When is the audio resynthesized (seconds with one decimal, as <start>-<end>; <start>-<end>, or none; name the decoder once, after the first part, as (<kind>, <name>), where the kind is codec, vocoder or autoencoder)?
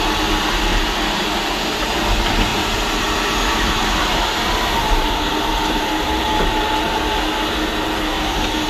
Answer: 0.7-1.8 (vocoder, BigVGAN v2); 2.5-6.4